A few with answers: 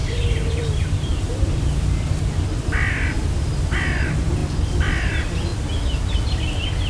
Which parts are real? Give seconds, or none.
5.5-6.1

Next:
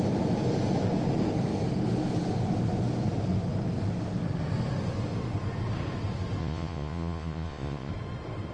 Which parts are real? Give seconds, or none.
0.0-6.4; 7.9-8.5

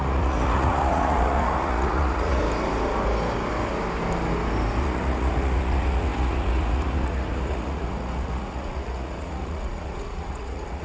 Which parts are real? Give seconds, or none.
2.4-4.8

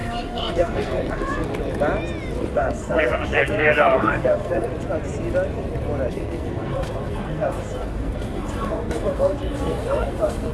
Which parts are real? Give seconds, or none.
1.5-2.5; 4.7-6.1

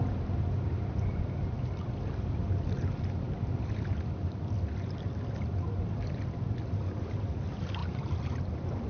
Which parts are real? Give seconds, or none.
0.0-8.9

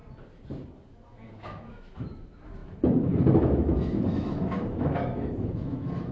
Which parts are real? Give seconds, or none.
0.0-0.9

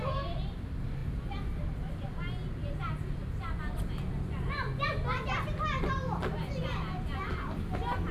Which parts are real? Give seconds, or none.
0.0-8.1

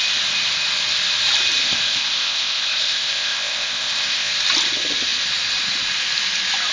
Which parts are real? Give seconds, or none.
0.0-1.6; 4.3-6.7